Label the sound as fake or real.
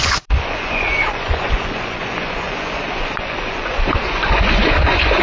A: fake